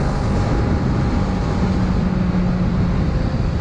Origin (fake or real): real